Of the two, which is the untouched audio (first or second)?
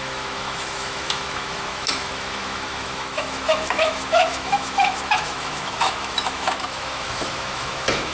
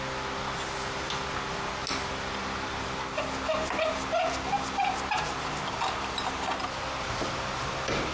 second